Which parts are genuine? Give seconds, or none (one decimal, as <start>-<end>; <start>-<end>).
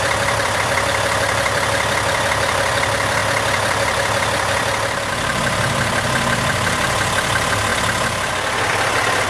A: 7.7-8.3